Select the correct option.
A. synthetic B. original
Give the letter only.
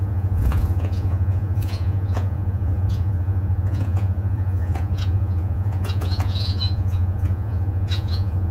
A